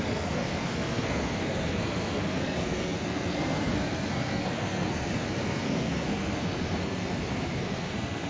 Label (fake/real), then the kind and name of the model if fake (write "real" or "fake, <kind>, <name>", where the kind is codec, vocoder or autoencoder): fake, codec, SNAC